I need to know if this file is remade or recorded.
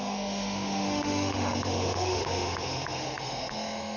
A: remade